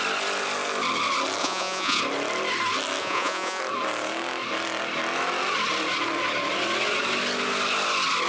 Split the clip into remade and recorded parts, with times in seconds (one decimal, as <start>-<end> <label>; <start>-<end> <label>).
0.0-1.4 recorded; 1.4-2.0 remade; 2.0-3.0 recorded; 3.0-3.6 remade; 3.6-8.3 recorded